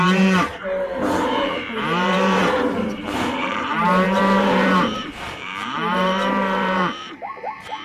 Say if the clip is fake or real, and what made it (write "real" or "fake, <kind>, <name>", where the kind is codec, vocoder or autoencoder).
fake, vocoder, BigVGAN v2